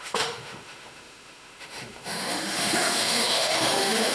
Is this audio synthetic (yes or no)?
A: yes